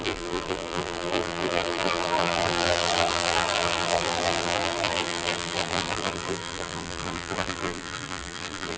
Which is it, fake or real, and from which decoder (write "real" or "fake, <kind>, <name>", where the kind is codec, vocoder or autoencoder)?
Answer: fake, vocoder, BigVGAN v2